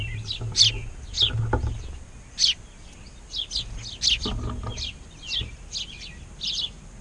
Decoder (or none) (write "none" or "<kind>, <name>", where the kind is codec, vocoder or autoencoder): none